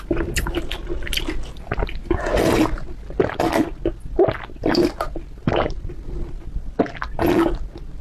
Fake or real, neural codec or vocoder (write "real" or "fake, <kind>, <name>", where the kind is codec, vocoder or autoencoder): real